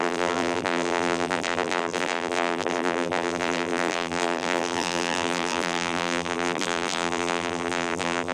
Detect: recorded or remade remade